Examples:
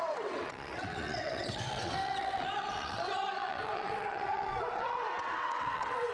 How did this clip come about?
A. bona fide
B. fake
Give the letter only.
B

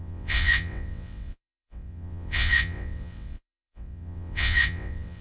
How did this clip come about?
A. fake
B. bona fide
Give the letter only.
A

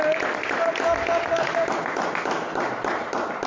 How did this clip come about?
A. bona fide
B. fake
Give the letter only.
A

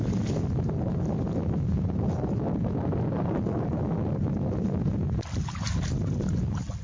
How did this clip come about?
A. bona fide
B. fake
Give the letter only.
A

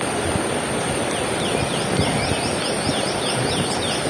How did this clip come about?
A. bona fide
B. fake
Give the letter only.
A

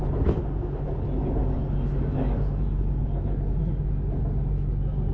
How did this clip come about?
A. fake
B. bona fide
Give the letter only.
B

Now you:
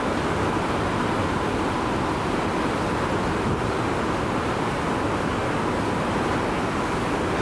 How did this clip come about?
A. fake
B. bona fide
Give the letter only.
B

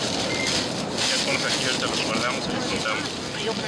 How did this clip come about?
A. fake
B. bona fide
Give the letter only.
B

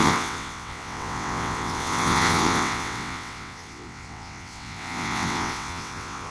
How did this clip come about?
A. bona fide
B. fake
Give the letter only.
B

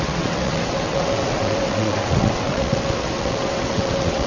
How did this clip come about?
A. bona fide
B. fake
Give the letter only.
B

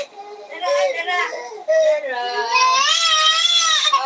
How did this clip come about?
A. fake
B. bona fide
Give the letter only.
B